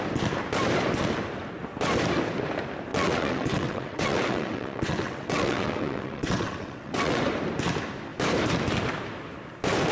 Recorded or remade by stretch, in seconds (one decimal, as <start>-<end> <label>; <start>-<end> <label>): 0.0-2.9 recorded; 2.9-7.2 remade; 7.2-9.9 recorded